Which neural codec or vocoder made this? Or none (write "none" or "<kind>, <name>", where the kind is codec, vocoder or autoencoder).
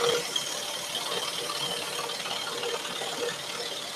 none